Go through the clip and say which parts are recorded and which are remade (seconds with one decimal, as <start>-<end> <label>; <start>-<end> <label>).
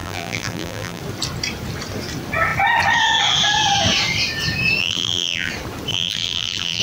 0.0-1.0 remade; 1.0-4.8 recorded; 4.8-5.5 remade; 5.5-5.9 recorded; 5.9-6.8 remade